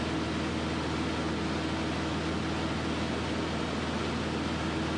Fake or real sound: real